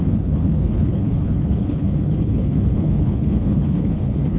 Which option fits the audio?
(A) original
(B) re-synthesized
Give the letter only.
B